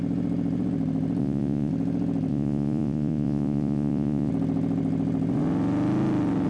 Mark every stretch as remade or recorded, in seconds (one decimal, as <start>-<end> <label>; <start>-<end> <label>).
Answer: 0.0-1.2 recorded; 1.2-1.7 remade; 1.7-2.3 recorded; 2.3-4.3 remade; 4.3-6.5 recorded